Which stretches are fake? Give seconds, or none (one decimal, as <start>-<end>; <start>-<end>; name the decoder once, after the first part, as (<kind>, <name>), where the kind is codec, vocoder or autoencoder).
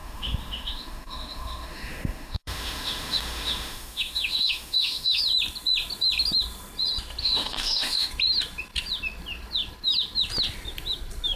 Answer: 0.0-5.2 (autoencoder, DAC-VAE); 7.2-8.1